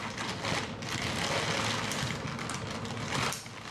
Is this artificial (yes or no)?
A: no